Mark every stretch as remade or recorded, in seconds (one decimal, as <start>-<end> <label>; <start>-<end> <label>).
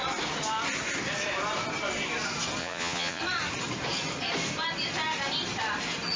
0.0-2.6 recorded; 2.6-3.2 remade; 3.2-6.2 recorded